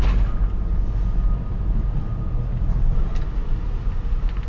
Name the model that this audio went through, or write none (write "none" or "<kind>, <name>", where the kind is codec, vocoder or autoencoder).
none